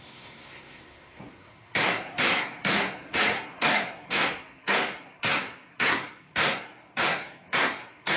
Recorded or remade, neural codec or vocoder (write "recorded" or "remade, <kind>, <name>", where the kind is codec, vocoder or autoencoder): remade, codec, SNAC